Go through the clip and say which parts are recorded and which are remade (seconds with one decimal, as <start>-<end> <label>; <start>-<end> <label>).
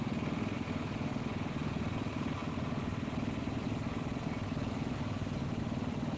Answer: 0.0-6.2 recorded